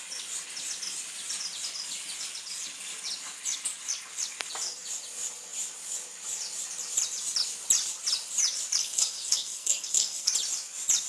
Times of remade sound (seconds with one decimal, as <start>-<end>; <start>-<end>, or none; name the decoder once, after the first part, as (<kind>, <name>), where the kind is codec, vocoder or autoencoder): 8.8-10.3 (codec, SNAC)